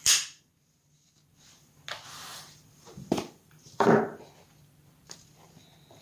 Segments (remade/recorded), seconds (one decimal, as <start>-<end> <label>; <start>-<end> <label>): 0.0-2.3 recorded; 2.3-4.0 remade; 4.0-6.0 recorded

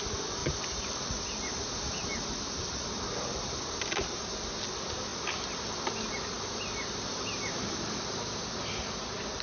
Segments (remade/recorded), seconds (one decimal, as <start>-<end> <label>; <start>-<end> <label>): 0.0-9.4 recorded

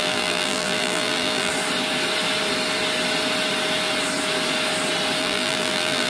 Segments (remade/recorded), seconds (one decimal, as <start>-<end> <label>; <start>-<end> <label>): 0.0-1.5 remade; 1.5-5.2 recorded; 5.2-6.1 remade

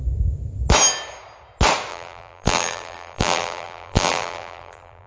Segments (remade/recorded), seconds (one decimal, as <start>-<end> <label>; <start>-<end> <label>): 0.0-1.9 recorded; 1.9-5.1 remade